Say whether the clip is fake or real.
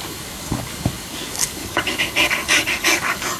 fake